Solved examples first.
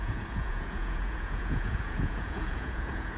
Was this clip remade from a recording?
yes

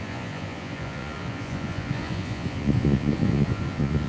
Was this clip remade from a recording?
yes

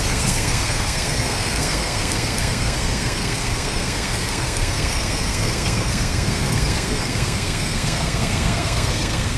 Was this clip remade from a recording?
yes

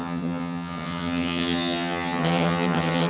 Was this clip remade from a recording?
yes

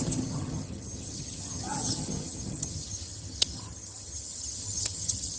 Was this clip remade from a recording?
yes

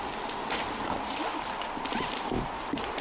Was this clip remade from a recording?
no